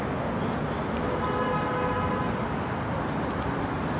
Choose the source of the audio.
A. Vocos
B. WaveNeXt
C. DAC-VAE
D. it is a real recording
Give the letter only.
D